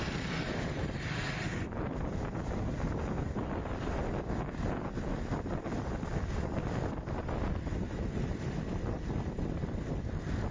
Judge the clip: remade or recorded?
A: recorded